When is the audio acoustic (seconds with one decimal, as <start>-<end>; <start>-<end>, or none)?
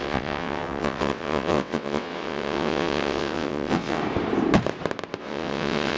4.0-5.2